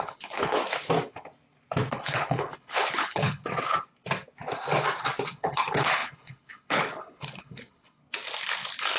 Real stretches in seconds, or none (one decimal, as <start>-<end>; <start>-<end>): 0.6-1.9; 3.4-5.3; 8.0-9.0